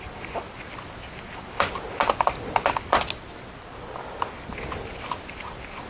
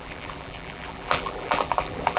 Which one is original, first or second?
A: first